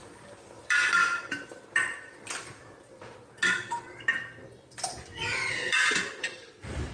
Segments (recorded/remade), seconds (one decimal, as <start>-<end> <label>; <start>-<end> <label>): 0.0-6.9 recorded